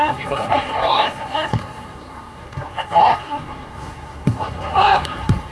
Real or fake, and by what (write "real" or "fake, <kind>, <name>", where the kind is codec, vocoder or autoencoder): fake, codec, SNAC